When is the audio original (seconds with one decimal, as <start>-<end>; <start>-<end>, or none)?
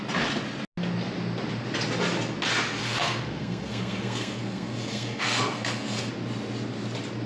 0.0-2.8; 6.1-7.3